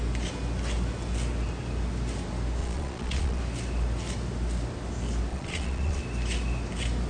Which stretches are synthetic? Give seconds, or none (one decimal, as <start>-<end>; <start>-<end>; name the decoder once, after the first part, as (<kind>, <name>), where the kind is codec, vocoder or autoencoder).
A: 2.6-3.4 (vocoder, Vocos); 5.3-6.0